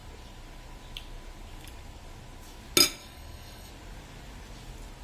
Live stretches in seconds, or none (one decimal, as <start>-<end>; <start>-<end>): 0.0-3.0; 3.7-5.0